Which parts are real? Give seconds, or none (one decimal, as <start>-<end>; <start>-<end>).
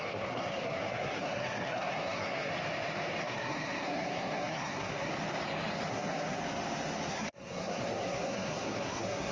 2.5-3.2; 5.1-5.9; 6.4-7.1